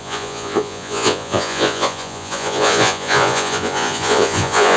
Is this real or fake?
fake